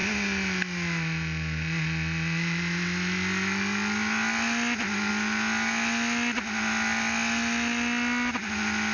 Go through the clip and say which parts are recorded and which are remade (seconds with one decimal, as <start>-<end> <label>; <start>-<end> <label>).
0.0-8.9 recorded